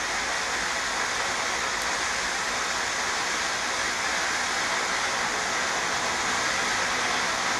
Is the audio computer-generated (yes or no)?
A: no